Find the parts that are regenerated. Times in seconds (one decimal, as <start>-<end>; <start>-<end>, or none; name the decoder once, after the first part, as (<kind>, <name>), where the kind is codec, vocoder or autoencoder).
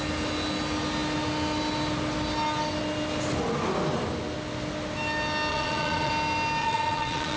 5.5-6.1 (vocoder, Vocos); 6.6-7.4